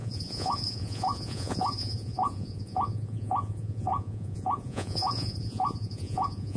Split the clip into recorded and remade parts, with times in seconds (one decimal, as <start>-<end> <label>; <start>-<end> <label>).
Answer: 0.0-6.6 remade